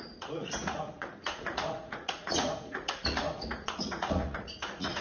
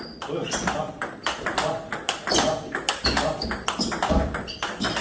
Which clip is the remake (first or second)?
first